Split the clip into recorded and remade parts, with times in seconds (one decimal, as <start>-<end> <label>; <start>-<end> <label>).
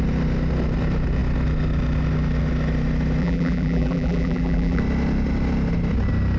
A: 0.0-3.2 recorded; 3.2-4.8 remade; 4.8-6.4 recorded